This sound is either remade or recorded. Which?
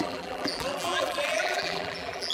remade